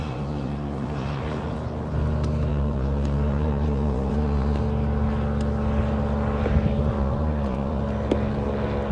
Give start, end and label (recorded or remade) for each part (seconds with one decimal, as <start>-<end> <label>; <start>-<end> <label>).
0.0-1.2 remade; 1.2-2.5 recorded; 2.5-4.6 remade; 4.6-6.8 recorded; 6.8-7.8 remade; 7.8-8.9 recorded